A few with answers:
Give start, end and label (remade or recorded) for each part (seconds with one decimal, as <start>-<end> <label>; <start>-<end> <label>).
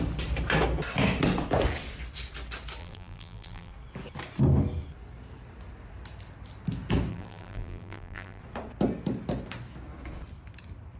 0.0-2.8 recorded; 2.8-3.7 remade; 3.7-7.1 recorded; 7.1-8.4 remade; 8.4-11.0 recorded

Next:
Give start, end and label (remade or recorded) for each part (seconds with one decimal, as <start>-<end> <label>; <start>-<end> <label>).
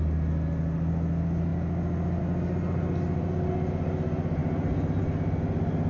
0.0-5.9 recorded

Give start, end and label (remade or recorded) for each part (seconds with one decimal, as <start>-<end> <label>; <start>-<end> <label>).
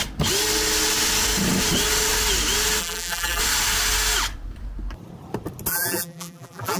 0.0-2.8 recorded; 2.8-3.4 remade; 3.4-5.7 recorded; 5.7-6.8 remade